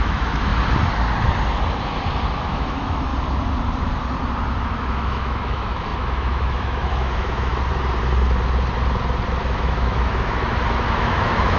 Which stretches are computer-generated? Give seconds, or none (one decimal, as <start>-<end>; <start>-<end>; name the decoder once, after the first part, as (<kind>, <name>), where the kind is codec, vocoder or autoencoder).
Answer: 0.0-0.5 (autoencoder, DAC-VAE); 2.4-3.1; 4.6-7.5; 9.4-11.6